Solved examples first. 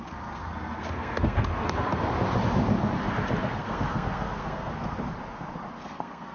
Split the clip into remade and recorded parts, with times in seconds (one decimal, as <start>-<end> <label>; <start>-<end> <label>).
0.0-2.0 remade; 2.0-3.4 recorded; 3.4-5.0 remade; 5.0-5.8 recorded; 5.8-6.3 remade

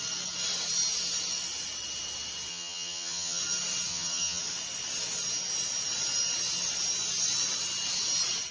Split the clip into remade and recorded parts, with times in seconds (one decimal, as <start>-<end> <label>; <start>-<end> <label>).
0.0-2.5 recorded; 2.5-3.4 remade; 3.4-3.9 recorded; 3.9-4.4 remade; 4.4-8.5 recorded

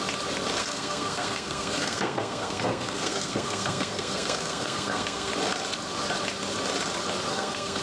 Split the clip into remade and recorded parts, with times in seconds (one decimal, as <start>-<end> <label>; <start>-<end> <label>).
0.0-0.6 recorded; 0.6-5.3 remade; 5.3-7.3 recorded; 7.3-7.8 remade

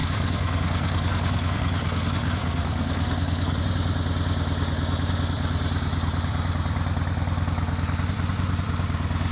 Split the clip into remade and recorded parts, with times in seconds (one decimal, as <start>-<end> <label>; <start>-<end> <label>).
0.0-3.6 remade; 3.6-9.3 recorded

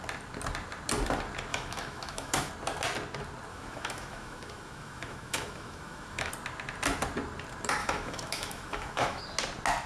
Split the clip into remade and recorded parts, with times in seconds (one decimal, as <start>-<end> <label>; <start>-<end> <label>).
0.0-1.5 recorded; 1.5-2.5 remade; 2.5-3.5 recorded; 3.5-6.3 remade; 6.3-7.8 recorded; 7.8-9.2 remade; 9.2-9.9 recorded

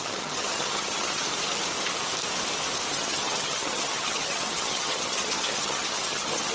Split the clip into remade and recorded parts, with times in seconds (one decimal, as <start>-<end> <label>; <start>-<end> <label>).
0.0-1.2 remade; 1.2-2.9 recorded; 2.9-6.5 remade